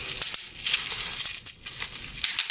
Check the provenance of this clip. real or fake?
real